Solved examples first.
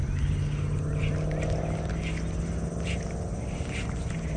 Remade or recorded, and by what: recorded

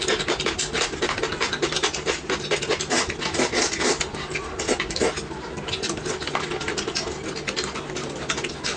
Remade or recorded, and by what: recorded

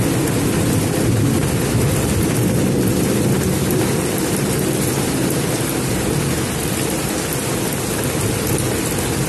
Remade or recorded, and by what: recorded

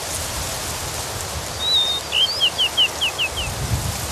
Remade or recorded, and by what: recorded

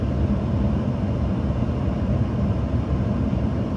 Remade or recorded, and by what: recorded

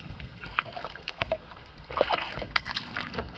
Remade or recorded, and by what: remade, codec, SNAC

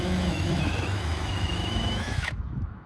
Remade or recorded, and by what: remade, autoencoder, DAC-VAE